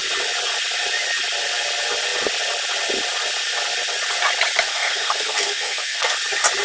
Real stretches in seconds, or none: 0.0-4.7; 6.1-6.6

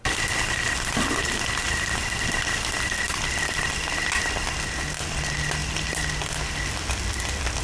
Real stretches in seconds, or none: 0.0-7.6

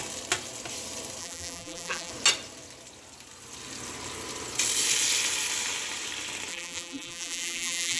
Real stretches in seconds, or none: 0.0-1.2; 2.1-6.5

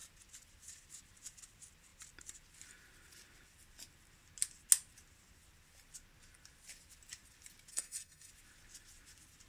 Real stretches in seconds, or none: 0.0-7.7; 8.3-9.5

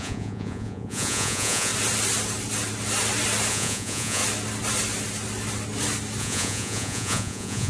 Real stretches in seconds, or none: 1.7-3.5; 4.2-6.2

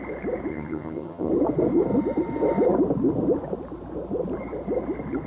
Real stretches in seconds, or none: 0.0-0.5; 1.3-5.3

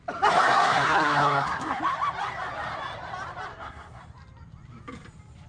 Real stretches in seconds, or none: 0.0-0.4; 1.8-3.5; 4.0-5.5

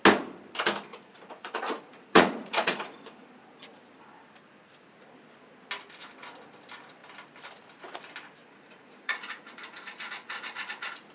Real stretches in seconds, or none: 0.0-0.9; 3.4-8.4